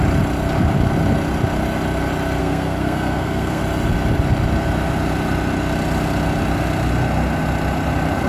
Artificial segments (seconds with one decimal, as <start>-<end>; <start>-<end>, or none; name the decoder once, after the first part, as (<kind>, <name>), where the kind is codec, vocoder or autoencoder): 2.4-3.6 (codec, SNAC)